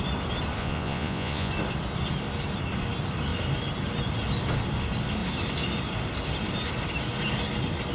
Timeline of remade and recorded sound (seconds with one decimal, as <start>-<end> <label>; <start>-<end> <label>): 0.0-0.6 recorded; 0.6-1.5 remade; 1.5-7.9 recorded